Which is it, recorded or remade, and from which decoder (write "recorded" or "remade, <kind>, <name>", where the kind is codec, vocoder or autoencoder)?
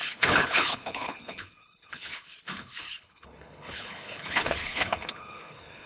remade, codec, HILCodec